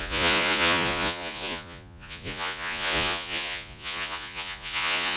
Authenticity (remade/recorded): remade